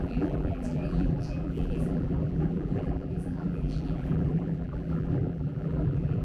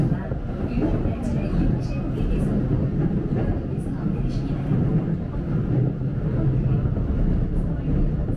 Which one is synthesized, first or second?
first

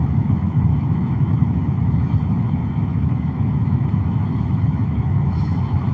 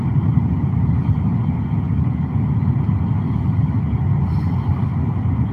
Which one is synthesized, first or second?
first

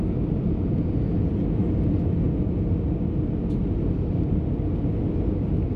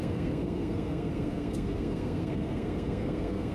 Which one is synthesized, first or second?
second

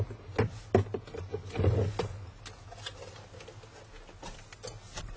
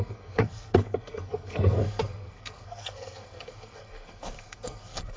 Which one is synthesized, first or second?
second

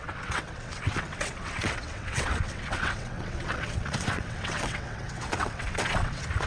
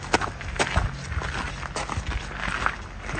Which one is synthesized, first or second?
first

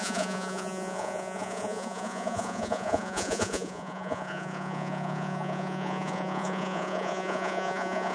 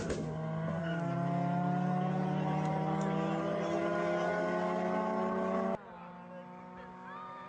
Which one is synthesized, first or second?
first